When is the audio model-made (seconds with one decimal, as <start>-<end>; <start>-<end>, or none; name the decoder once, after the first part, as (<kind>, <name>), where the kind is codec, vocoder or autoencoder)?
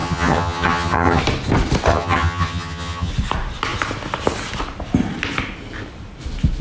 0.0-1.2 (vocoder, HiFi-GAN); 1.9-3.1